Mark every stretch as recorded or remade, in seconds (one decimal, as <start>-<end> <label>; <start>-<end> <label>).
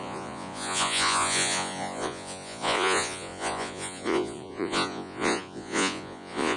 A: 0.0-6.6 remade